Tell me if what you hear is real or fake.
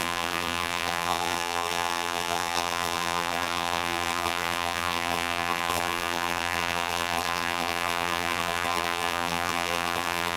fake